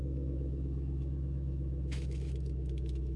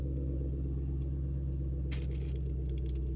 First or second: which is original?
second